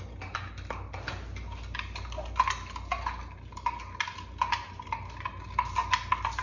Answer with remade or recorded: recorded